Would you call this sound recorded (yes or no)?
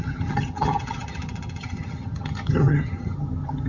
no